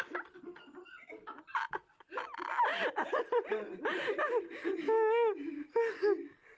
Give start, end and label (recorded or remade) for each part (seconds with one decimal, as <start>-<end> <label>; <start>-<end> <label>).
0.0-6.6 recorded